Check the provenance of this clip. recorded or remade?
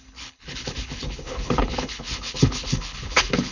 remade